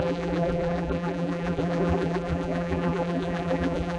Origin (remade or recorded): remade